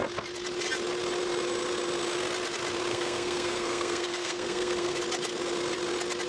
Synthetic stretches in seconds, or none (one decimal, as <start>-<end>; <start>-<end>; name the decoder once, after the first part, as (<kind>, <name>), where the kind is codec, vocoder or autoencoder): 2.9-5.0 (codec, SNAC)